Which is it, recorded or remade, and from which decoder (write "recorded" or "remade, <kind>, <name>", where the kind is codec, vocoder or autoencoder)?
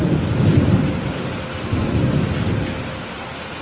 recorded